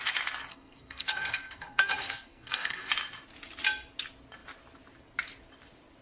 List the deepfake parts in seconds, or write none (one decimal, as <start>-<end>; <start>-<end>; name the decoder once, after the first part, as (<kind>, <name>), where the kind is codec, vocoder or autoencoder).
0.5-2.9 (codec, SNAC)